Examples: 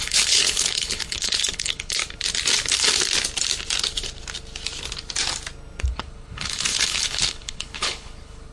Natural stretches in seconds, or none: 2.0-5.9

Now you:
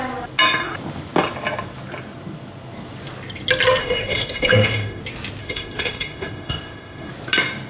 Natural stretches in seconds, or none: 0.0-3.8; 5.0-5.4; 7.1-7.7